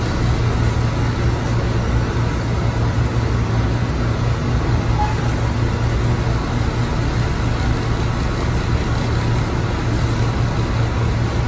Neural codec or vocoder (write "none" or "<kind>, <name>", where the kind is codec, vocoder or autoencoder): none